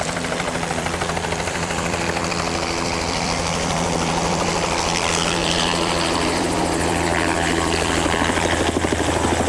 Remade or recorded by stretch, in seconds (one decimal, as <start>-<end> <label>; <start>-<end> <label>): 0.0-9.5 remade